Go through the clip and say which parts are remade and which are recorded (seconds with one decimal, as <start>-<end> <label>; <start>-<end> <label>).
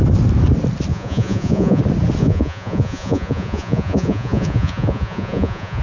0.0-0.9 recorded; 0.9-1.8 remade; 1.8-2.2 recorded; 2.2-5.8 remade